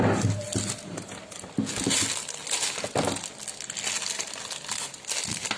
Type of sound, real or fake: real